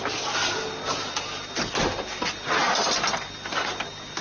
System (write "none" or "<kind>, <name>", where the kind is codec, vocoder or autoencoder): none